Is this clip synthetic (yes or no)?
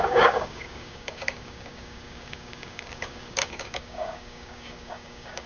yes